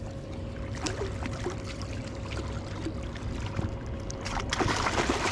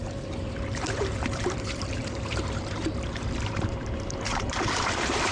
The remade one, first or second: second